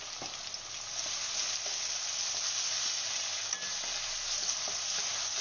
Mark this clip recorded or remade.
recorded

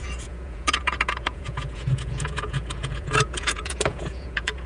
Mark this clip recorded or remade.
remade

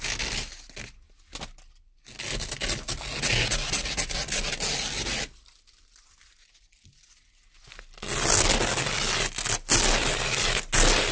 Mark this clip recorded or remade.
recorded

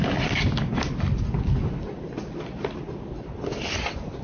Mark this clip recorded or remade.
recorded